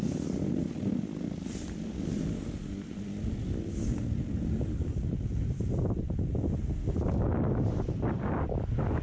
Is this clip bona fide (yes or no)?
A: yes